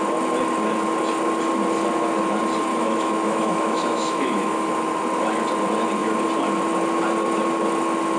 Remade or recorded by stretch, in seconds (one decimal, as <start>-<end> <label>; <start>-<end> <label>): 0.0-2.7 recorded; 2.7-4.7 remade; 4.7-8.2 recorded